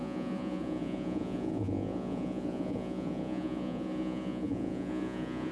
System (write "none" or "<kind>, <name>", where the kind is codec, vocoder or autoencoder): vocoder, Vocos